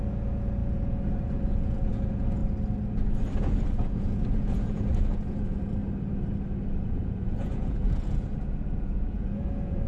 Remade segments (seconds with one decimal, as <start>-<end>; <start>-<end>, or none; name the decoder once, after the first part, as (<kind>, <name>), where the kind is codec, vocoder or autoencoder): 0.0-2.4 (vocoder, Vocos); 3.4-5.8; 6.9-9.9